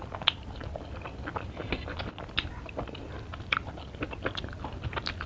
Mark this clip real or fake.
real